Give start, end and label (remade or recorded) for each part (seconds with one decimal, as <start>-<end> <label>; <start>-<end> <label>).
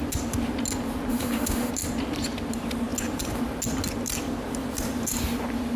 0.0-1.1 recorded; 1.1-1.7 remade; 1.7-5.8 recorded